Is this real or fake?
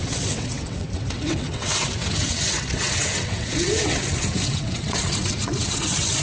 fake